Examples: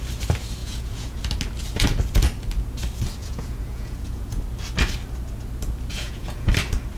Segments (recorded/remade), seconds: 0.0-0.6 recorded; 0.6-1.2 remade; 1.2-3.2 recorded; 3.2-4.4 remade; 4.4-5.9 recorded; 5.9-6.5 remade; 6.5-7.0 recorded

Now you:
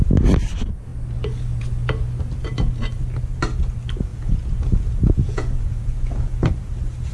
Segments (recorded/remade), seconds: 0.0-4.1 recorded; 4.1-6.5 remade; 6.5-7.1 recorded

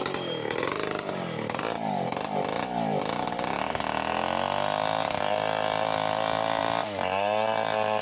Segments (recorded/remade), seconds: 0.0-8.0 recorded

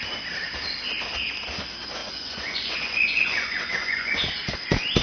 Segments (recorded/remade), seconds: 0.0-2.0 recorded; 2.0-4.2 remade; 4.2-5.0 recorded

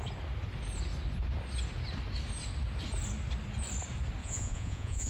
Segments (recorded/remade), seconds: 0.0-4.2 recorded; 4.2-5.1 remade

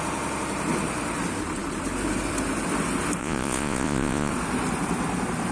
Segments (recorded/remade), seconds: 0.0-3.2 recorded; 3.2-4.3 remade; 4.3-5.5 recorded